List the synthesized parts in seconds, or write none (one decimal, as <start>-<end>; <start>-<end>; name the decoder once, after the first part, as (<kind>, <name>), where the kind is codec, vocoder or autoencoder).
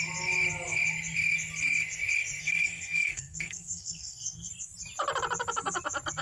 2.4-4.5 (codec, SNAC)